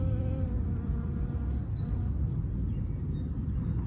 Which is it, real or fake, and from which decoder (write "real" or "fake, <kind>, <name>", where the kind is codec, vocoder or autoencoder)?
real